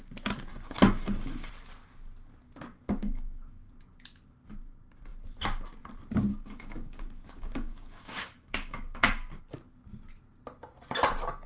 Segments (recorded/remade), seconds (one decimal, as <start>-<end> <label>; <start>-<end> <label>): 0.0-0.5 recorded; 0.5-1.5 remade; 1.5-3.0 recorded; 3.0-3.7 remade; 3.7-6.3 recorded; 6.3-9.4 remade; 9.4-11.5 recorded